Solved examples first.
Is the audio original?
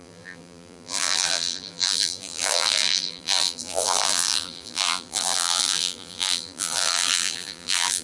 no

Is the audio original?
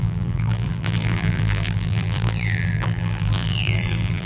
no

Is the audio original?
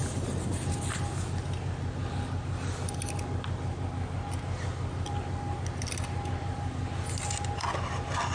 yes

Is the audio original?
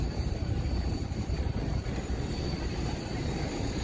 no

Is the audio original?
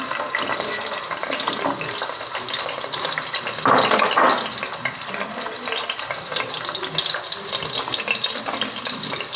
yes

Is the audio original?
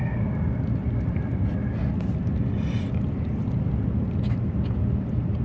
yes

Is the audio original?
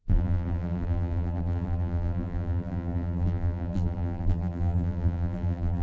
no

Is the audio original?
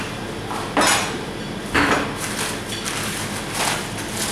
yes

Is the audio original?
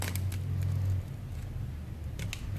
yes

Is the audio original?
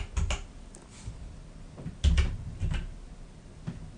yes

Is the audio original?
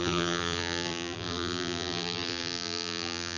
no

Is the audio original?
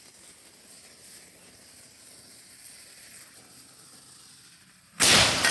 yes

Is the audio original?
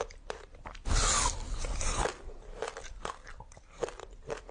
no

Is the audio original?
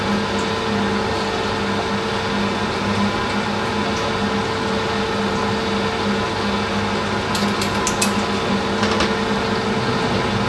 yes